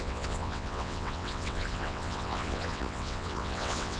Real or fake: fake